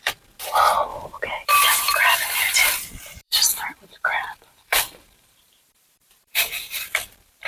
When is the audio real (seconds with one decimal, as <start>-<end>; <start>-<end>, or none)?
none